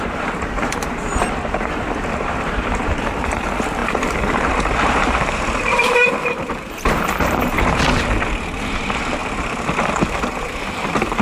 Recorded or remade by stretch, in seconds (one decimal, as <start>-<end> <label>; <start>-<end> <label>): 0.0-9.2 remade; 9.2-10.4 recorded; 10.4-11.2 remade